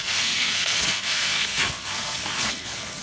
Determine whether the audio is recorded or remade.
remade